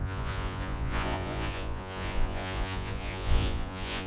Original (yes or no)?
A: no